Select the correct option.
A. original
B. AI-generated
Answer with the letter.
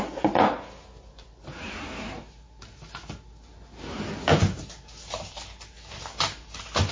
A